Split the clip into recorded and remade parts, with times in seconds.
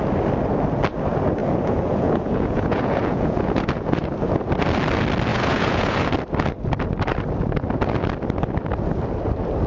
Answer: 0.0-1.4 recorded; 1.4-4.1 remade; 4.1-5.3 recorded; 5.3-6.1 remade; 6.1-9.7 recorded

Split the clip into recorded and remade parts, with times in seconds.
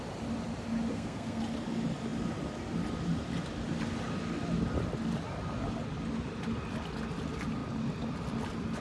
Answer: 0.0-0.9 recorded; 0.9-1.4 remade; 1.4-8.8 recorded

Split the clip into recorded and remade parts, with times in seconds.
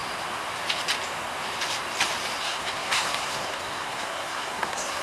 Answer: 0.0-2.4 recorded; 2.4-5.0 remade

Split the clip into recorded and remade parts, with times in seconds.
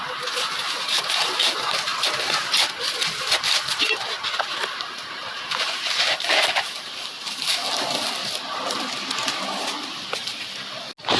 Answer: 0.0-1.9 remade; 1.9-4.6 recorded; 4.6-8.2 remade; 8.2-11.2 recorded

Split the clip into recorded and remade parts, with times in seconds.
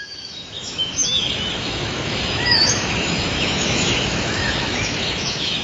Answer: 0.0-5.6 remade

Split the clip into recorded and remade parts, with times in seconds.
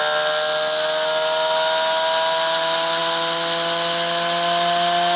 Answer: 0.0-5.2 recorded